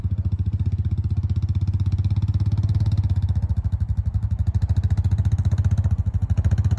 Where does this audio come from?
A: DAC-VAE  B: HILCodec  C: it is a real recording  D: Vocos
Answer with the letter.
C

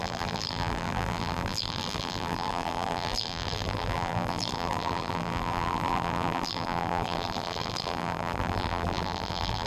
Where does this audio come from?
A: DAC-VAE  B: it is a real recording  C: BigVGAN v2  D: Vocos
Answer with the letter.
C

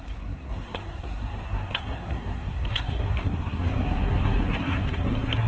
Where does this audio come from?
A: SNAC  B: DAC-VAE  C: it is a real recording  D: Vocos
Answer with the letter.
A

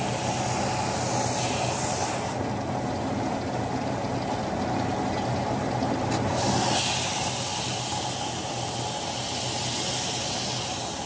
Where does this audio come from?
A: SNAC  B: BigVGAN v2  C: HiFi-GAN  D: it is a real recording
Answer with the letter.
D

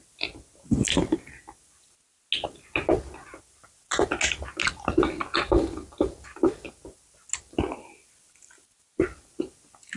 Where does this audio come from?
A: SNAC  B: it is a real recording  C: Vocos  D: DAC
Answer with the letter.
B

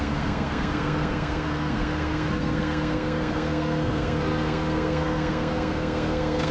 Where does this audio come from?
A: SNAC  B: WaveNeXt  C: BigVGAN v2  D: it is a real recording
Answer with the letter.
A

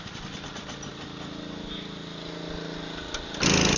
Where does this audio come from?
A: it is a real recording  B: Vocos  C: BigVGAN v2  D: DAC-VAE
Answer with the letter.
A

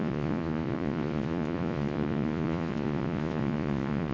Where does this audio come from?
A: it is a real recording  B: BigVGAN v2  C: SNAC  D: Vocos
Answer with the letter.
D